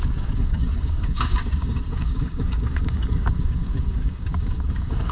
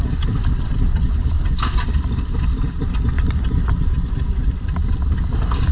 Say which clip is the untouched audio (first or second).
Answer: second